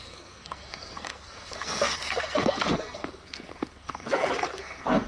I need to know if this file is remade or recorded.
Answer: remade